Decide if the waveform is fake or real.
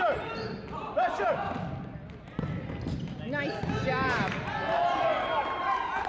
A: real